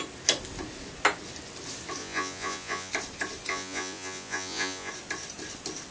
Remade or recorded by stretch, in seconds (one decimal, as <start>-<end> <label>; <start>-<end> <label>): 0.0-2.0 recorded; 2.0-2.9 remade; 2.9-3.5 recorded; 3.5-4.9 remade; 4.9-5.9 recorded